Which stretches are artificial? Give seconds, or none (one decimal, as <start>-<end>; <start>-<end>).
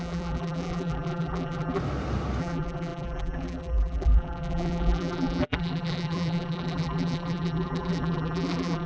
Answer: 0.0-1.8; 2.4-8.9